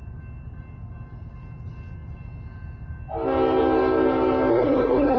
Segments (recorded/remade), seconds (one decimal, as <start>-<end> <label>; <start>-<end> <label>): 0.0-4.5 recorded; 4.5-5.2 remade